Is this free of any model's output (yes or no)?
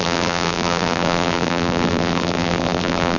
no